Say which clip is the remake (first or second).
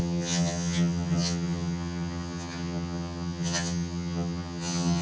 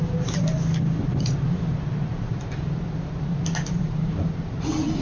first